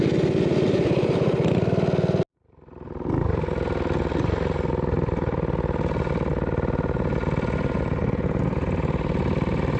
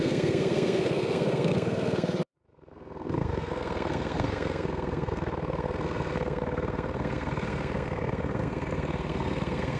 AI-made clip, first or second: second